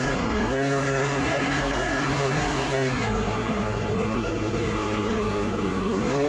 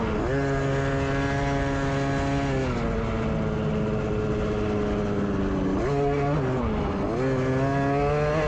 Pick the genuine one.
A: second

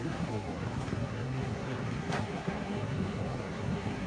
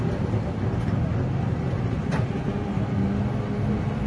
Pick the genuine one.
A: second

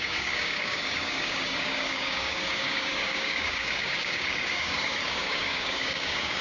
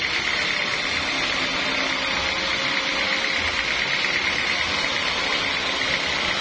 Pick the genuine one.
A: second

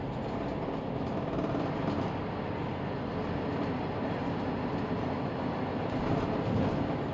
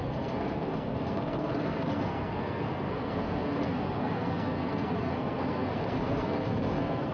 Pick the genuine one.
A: first